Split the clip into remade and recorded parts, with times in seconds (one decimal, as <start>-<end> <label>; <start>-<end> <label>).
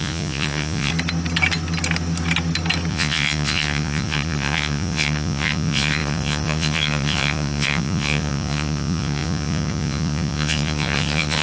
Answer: 0.0-0.9 remade; 0.9-2.9 recorded; 2.9-11.4 remade